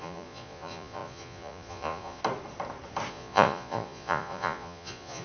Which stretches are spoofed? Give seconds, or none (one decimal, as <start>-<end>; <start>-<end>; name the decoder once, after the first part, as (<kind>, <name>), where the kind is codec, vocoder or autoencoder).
0.0-2.2 (vocoder, Vocos); 3.1-5.2